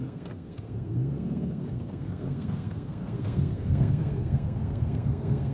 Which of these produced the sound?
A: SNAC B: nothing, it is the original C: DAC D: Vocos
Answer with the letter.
A